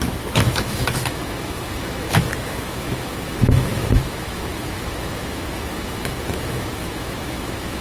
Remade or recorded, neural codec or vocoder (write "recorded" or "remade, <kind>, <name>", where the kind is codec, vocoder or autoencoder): remade, autoencoder, DAC-VAE